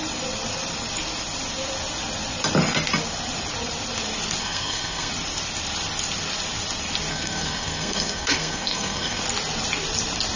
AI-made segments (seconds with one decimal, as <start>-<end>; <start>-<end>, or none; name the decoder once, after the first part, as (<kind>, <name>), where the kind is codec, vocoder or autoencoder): 4.4-5.1 (codec, SNAC); 7.1-9.2